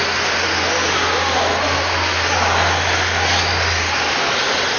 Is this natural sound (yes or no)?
yes